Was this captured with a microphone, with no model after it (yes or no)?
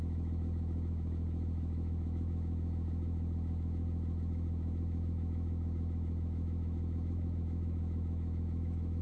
no